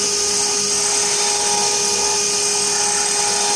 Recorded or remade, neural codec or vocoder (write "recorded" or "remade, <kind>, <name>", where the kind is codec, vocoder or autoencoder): recorded